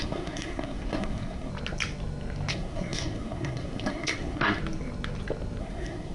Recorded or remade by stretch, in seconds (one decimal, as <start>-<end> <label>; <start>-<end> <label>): 0.0-1.5 remade; 1.5-2.5 recorded; 2.5-4.6 remade; 4.6-5.6 recorded; 5.6-6.1 remade